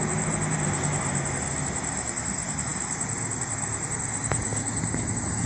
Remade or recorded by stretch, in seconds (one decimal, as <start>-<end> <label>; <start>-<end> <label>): 0.0-5.5 recorded